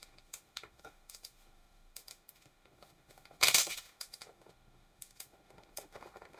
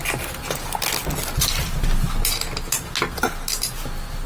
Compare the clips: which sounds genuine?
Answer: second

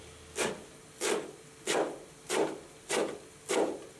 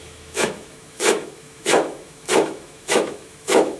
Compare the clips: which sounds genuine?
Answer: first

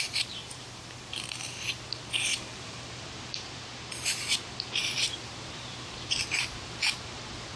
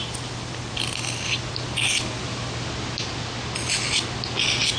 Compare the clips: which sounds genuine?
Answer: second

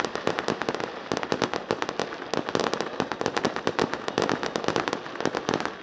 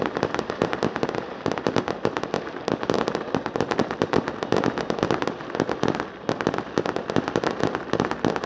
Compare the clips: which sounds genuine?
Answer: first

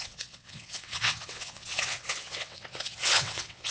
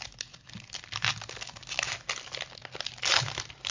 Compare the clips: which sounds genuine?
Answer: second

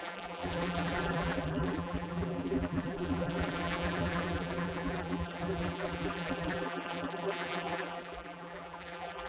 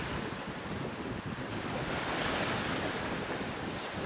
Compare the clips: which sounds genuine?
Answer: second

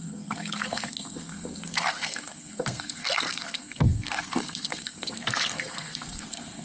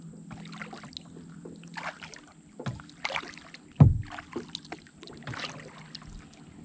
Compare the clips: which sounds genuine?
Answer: second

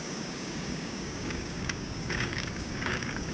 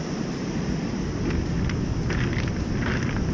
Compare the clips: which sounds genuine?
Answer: second